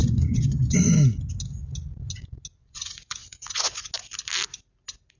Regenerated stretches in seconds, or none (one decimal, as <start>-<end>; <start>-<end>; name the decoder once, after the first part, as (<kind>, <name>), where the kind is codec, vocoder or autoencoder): 0.0-0.8 (vocoder, Vocos); 2.6-3.9